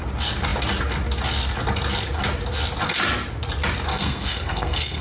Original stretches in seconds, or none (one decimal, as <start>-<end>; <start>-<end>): 0.0-3.9